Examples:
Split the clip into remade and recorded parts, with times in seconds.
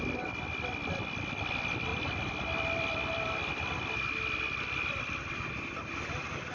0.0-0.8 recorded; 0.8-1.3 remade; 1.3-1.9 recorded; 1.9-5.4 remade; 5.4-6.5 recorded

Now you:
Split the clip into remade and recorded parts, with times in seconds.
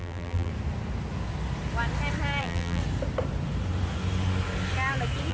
0.0-0.5 remade; 0.5-2.4 recorded; 2.4-2.8 remade; 2.8-5.3 recorded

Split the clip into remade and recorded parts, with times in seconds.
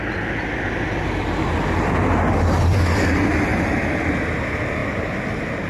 0.0-3.5 recorded; 3.5-4.0 remade; 4.0-4.8 recorded; 4.8-5.7 remade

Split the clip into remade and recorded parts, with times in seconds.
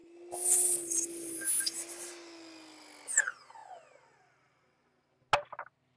0.0-6.0 recorded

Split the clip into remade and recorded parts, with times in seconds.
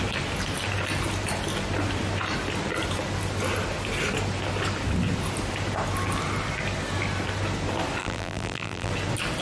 0.0-8.0 recorded; 8.0-8.9 remade; 8.9-9.4 recorded